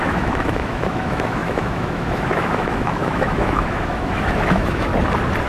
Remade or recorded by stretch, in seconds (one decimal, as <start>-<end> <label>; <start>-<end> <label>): 0.0-4.9 remade; 4.9-5.5 recorded